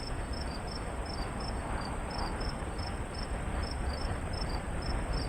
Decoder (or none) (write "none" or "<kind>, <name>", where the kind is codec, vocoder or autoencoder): vocoder, BigVGAN v2